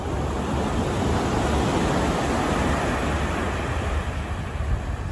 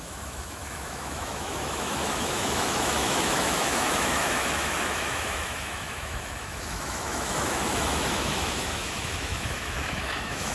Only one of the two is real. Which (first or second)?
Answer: first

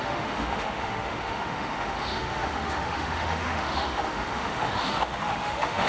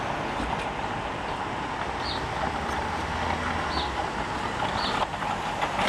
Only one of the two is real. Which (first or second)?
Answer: second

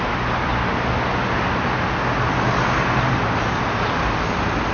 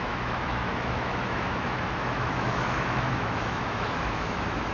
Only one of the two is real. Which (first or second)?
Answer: first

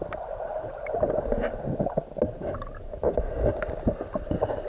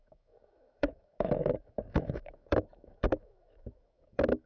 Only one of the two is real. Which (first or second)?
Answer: first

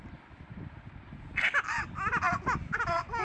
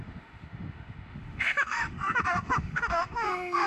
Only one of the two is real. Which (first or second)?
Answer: first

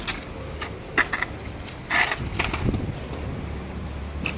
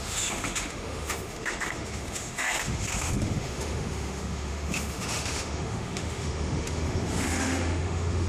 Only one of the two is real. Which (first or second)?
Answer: first